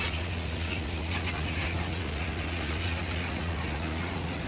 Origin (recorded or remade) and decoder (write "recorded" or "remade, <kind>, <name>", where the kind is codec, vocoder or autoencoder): remade, vocoder, Vocos